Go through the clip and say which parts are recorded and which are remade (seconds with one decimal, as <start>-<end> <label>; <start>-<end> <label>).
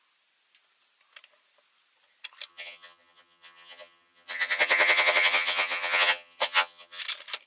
0.0-2.5 recorded; 2.5-7.0 remade; 7.0-7.5 recorded